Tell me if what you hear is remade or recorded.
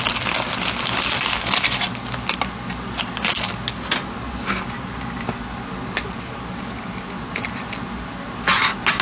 recorded